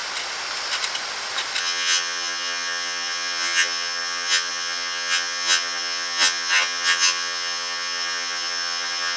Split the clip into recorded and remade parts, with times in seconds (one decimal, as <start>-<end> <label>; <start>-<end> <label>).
0.0-1.6 recorded; 1.6-9.2 remade